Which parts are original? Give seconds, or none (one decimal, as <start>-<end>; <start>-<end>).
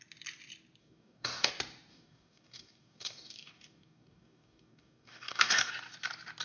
0.0-0.8; 1.5-1.9; 5.7-6.4